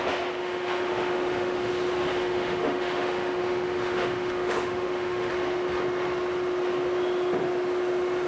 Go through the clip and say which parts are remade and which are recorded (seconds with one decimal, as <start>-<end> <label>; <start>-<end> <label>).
0.0-0.4 recorded; 0.4-1.7 remade; 1.7-2.1 recorded; 2.1-5.3 remade; 5.3-8.3 recorded